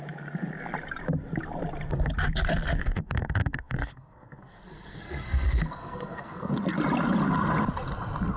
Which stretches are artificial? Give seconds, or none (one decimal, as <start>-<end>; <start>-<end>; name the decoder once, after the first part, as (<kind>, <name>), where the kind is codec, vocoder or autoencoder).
2.7-6.5 (codec, SNAC)